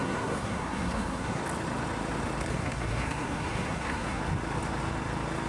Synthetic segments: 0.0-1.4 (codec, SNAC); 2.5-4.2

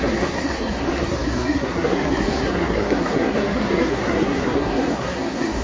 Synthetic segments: 0.0-5.6 (codec, SNAC)

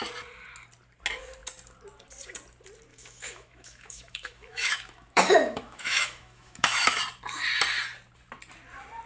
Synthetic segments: 2.9-7.0 (autoencoder, DAC-VAE)

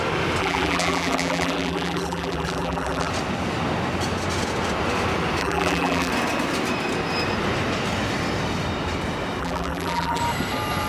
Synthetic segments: 0.4-3.1 (vocoder, BigVGAN v2); 5.4-6.1; 9.4-10.2